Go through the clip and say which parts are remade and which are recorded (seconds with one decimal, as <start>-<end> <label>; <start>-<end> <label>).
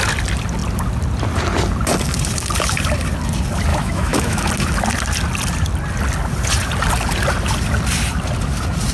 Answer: 0.0-3.7 recorded; 3.7-4.5 remade; 4.5-8.9 recorded